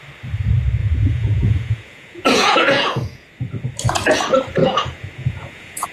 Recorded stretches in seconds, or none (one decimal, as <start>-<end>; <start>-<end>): 0.0-0.8; 3.3-4.6